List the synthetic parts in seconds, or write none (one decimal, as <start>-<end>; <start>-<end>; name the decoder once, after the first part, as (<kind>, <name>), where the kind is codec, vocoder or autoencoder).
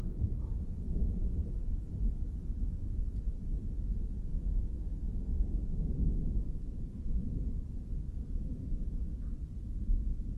4.3-5.0 (autoencoder, DAC-VAE)